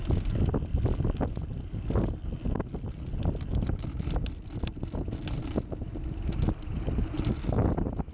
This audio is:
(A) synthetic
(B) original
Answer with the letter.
B